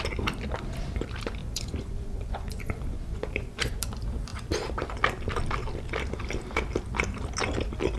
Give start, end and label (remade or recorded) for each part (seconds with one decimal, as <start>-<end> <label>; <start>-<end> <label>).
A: 0.0-1.4 recorded; 1.4-3.8 remade; 3.8-8.0 recorded